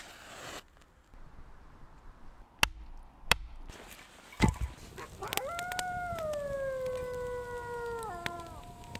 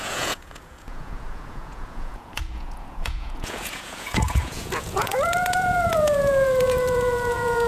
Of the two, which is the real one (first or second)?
first